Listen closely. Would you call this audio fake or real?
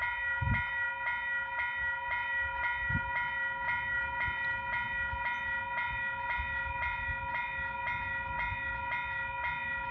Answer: real